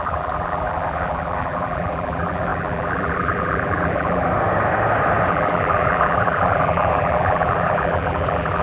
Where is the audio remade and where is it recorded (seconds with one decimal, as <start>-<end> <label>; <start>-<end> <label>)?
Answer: 0.0-4.3 remade; 4.3-5.3 recorded; 5.3-8.6 remade